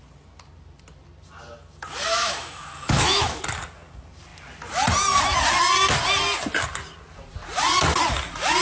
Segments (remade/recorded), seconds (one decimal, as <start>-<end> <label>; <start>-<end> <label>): 0.0-2.1 recorded; 2.1-3.4 remade; 3.4-8.6 recorded